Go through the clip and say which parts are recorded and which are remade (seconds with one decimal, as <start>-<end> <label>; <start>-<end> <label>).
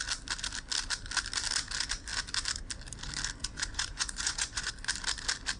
0.0-3.4 recorded; 3.4-4.7 remade; 4.7-5.6 recorded